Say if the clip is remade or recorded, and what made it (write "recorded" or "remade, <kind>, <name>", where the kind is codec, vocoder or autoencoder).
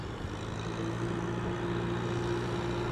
recorded